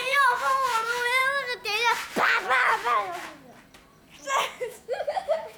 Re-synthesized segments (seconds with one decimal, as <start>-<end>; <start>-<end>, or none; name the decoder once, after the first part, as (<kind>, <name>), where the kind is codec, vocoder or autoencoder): 0.0-1.2 (autoencoder, DAC-VAE); 4.3-5.6